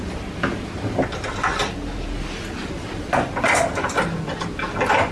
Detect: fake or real real